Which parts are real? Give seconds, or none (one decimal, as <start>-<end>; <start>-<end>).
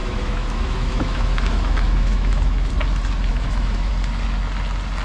2.7-3.3; 3.9-5.0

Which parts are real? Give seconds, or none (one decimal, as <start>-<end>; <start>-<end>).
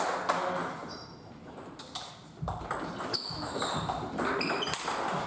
0.0-3.1; 3.6-5.3